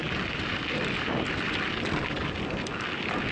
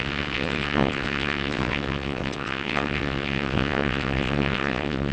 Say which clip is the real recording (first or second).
first